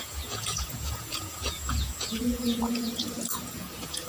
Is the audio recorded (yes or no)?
no